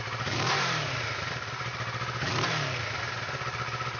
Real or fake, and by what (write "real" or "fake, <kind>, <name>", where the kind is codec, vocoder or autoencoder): real